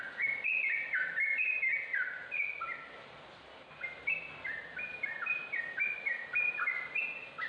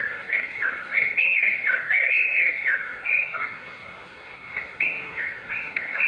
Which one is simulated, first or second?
second